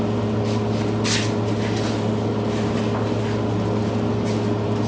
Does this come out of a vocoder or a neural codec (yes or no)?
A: no